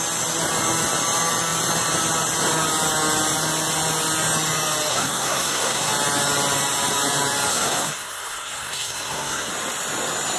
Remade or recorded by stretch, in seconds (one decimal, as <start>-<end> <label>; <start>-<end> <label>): 0.0-4.9 recorded; 4.9-5.9 remade; 5.9-7.5 recorded; 7.5-9.5 remade; 9.5-10.4 recorded